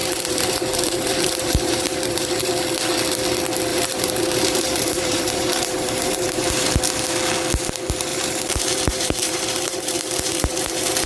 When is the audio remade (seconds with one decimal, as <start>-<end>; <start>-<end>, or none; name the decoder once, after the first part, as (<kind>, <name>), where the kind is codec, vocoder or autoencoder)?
0.0-2.5 (vocoder, BigVGAN v2); 3.7-6.8; 8.1-11.1